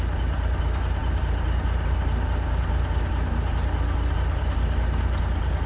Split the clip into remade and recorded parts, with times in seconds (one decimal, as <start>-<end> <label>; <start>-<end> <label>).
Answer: 0.0-5.7 recorded